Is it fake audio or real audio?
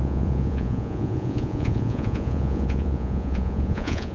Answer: fake